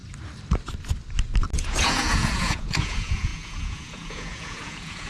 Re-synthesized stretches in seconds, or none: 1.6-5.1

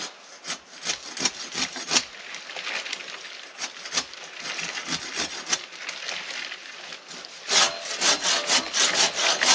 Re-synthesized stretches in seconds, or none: none

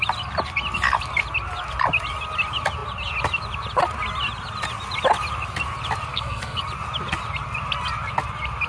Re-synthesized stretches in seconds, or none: 6.1-6.6

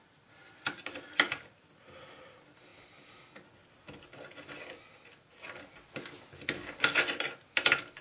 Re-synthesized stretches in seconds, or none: none

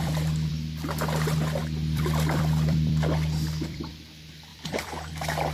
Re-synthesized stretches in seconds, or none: 0.0-0.5; 1.6-3.9; 4.5-5.1

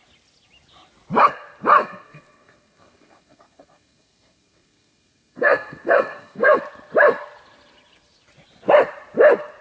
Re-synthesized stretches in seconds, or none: 1.8-6.6

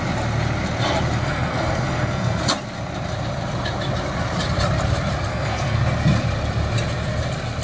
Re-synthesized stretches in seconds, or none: 1.2-2.4; 5.3-5.8

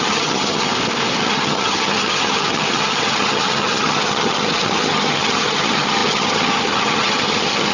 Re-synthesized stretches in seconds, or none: 0.0-0.7; 1.2-7.7